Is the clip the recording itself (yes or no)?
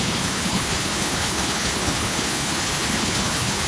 no